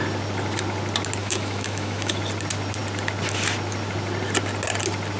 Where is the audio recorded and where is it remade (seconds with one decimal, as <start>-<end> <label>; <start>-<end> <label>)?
0.0-1.2 recorded; 1.2-2.2 remade; 2.2-5.2 recorded